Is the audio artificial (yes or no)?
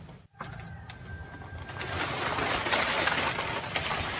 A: no